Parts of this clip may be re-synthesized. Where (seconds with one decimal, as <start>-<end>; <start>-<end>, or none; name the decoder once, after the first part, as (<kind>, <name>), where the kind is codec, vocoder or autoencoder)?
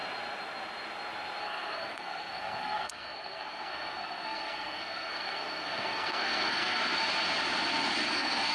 1.4-6.8 (codec, SNAC); 8.1-8.5